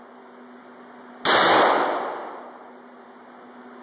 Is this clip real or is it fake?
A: real